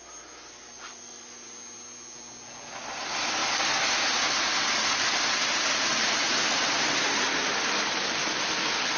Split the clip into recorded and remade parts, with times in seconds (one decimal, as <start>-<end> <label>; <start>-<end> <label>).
0.0-9.0 recorded